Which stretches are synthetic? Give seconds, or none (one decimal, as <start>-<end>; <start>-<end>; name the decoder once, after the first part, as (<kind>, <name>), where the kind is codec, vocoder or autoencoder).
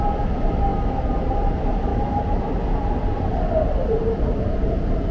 1.9-2.6 (autoencoder, DAC-VAE)